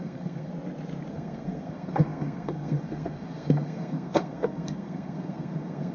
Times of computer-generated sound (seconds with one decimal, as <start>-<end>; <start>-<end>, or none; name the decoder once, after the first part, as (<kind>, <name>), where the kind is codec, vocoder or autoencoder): 0.0-0.5 (codec, SNAC); 1.1-5.9